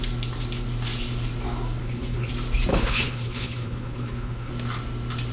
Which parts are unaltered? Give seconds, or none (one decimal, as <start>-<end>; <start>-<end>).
0.0-1.8; 2.3-2.7; 4.5-5.3